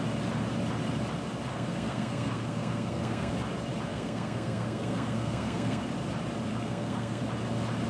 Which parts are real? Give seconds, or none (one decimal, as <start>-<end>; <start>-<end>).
0.0-1.5; 3.3-3.9; 5.8-6.5; 7.2-7.9